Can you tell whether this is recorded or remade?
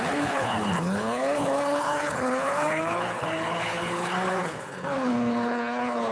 remade